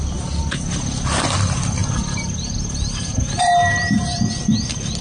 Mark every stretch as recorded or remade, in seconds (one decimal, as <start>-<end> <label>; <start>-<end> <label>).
0.0-1.8 recorded; 1.8-4.2 remade; 4.2-5.0 recorded